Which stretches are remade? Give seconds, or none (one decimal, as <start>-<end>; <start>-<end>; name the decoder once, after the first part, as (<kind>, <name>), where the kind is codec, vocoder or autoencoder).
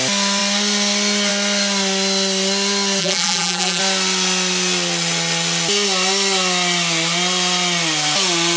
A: 3.0-3.8 (vocoder, BigVGAN v2)